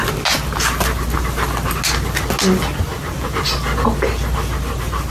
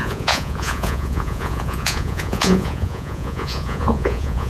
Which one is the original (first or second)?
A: first